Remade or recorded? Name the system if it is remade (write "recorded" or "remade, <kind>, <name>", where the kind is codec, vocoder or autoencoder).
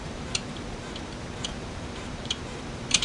remade, vocoder, BigVGAN v2